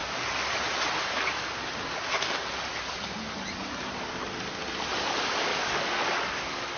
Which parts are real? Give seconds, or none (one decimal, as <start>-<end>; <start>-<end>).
0.0-5.5